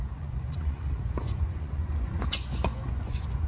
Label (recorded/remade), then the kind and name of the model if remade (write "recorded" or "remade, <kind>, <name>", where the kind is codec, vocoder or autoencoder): remade, vocoder, Vocos